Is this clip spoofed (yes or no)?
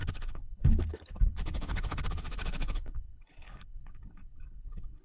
yes